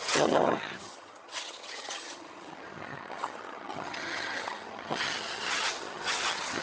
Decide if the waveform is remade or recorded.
remade